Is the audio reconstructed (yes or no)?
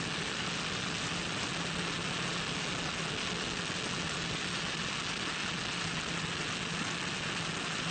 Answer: no